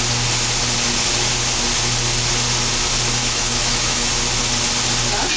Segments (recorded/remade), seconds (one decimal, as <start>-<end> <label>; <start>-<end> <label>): 0.0-3.2 recorded; 3.2-4.1 remade; 4.1-5.4 recorded